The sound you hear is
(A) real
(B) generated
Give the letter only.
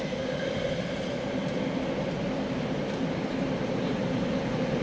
A